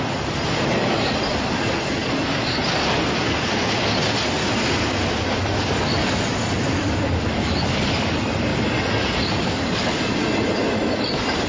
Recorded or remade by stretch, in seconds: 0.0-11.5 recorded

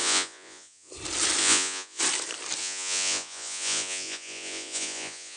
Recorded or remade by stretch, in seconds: 0.0-0.9 remade; 0.9-1.4 recorded; 1.4-2.0 remade; 2.0-2.6 recorded; 2.6-5.4 remade

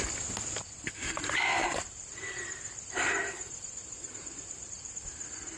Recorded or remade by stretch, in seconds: 0.0-1.6 recorded; 1.6-5.0 remade; 5.0-5.6 recorded

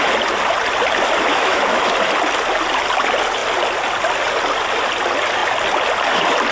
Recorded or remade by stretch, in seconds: 0.0-1.3 recorded; 1.3-1.9 remade; 1.9-6.5 recorded

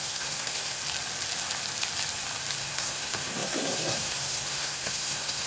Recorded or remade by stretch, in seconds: 0.0-0.8 remade; 0.8-2.6 recorded; 2.6-5.5 remade

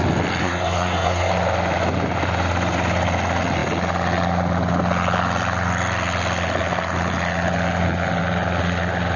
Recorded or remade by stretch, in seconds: 0.0-0.4 recorded; 0.4-1.3 remade; 1.3-9.2 recorded

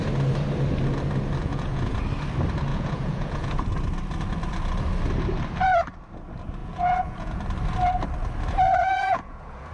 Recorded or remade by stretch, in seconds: 0.0-1.4 recorded; 1.4-2.0 remade; 2.0-2.7 recorded; 2.7-3.6 remade; 3.6-6.6 recorded; 6.6-7.4 remade; 7.4-8.8 recorded; 8.8-9.7 remade